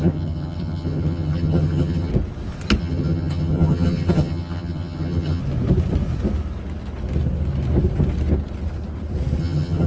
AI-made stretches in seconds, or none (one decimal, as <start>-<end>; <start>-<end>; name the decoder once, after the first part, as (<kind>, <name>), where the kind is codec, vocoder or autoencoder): 0.0-2.1 (vocoder, HiFi-GAN); 2.8-5.4; 9.4-9.9